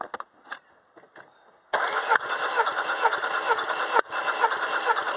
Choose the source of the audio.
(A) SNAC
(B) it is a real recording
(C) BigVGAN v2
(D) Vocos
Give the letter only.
B